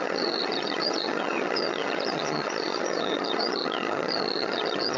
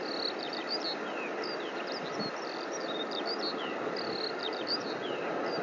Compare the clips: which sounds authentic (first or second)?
second